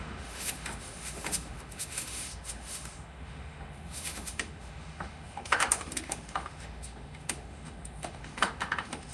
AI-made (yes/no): yes